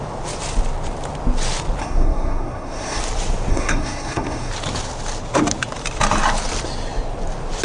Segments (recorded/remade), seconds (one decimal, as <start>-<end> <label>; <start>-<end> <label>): 0.0-1.8 recorded; 1.8-3.0 remade; 3.0-3.5 recorded; 3.5-4.5 remade; 4.5-7.6 recorded